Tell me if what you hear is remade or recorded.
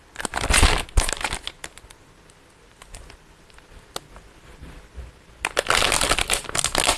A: recorded